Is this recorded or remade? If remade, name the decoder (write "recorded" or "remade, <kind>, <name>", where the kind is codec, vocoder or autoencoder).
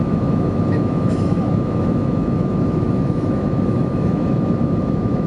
remade, autoencoder, DAC-VAE